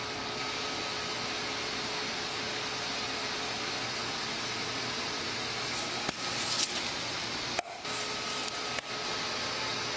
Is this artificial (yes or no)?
no